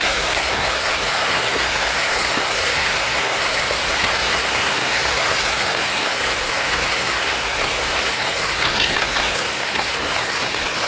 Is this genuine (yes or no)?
no